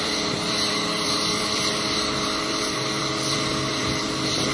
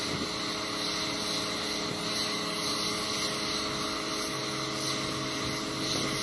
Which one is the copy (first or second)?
first